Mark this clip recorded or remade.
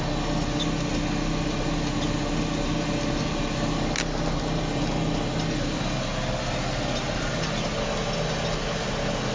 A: recorded